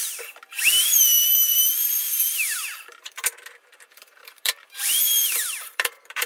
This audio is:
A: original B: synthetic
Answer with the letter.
B